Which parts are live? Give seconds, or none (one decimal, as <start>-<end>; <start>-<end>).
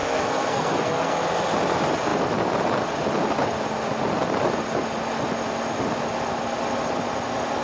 1.2-7.6